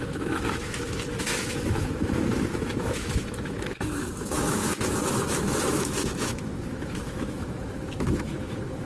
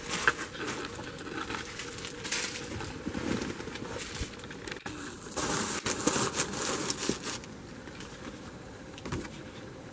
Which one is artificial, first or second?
first